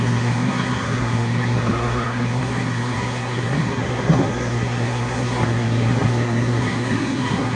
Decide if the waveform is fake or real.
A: fake